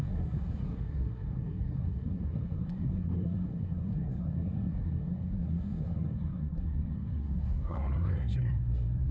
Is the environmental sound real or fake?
fake